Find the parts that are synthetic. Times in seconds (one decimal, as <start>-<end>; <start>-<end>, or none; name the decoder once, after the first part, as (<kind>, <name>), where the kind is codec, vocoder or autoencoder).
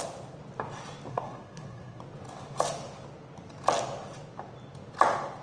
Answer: 1.1-2.0 (codec, SNAC)